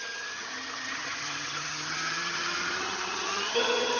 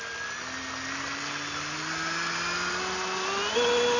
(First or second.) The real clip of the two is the second